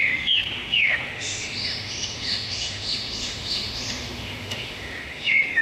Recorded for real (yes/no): no